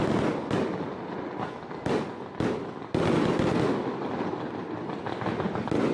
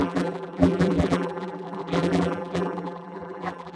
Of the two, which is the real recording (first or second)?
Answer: first